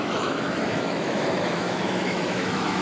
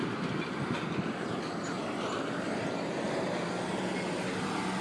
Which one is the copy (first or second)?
first